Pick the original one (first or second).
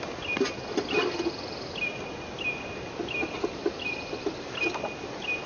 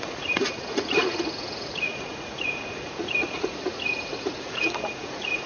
first